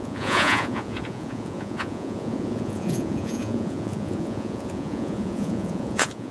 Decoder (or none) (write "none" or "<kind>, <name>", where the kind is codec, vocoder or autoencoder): vocoder, Vocos